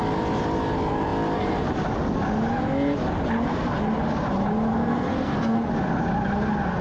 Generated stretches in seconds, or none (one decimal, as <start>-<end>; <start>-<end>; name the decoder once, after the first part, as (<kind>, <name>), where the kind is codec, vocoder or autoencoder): 4.7-5.7 (codec, SNAC)